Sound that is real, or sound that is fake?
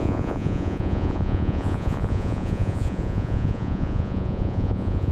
fake